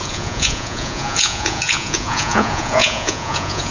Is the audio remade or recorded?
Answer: remade